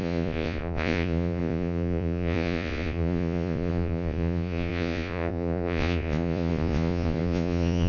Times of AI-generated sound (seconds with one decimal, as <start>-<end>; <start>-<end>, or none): 0.0-7.9